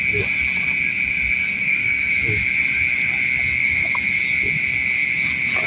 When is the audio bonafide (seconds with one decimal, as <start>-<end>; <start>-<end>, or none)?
0.0-1.4; 2.1-3.6; 4.2-5.7